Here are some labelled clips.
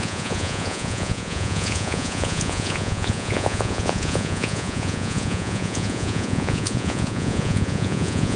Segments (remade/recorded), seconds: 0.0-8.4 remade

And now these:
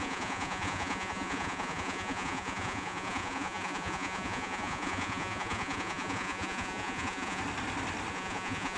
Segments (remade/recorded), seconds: 0.0-7.4 remade; 7.4-8.1 recorded; 8.1-8.8 remade

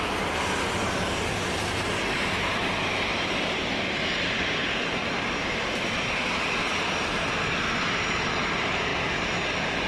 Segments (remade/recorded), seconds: 0.0-3.7 remade; 3.7-4.3 recorded; 4.3-6.6 remade; 6.6-7.9 recorded; 7.9-8.9 remade; 8.9-9.9 recorded

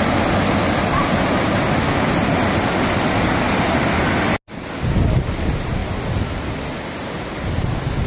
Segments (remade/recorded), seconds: 0.0-8.1 recorded